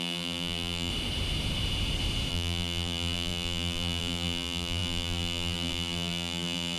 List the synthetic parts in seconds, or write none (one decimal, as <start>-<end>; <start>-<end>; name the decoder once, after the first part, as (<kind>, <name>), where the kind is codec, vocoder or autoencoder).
0.0-0.9 (vocoder, BigVGAN v2); 2.3-6.8